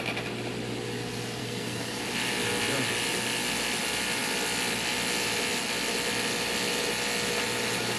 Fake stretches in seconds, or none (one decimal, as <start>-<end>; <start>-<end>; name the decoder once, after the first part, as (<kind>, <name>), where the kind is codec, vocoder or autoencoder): 1.4-2.0 (codec, SNAC)